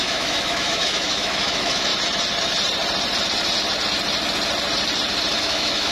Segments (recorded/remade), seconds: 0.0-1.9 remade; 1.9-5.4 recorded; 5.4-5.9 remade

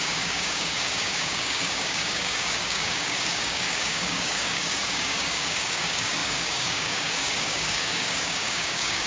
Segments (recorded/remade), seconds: 0.0-9.1 remade

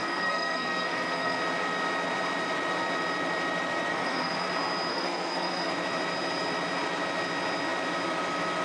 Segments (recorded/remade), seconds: 0.0-1.4 remade; 1.4-3.9 recorded; 3.9-4.5 remade; 4.5-4.9 recorded; 4.9-5.7 remade; 5.7-8.6 recorded

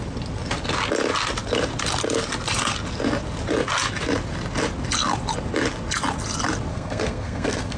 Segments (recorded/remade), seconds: 0.0-6.7 recorded; 6.7-7.8 remade

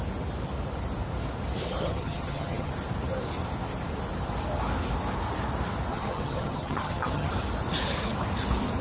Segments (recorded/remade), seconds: 0.0-1.8 recorded; 1.8-2.7 remade; 2.7-5.9 recorded; 5.9-7.3 remade; 7.3-8.8 recorded